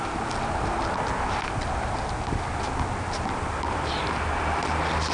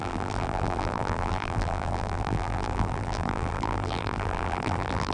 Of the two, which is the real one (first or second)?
first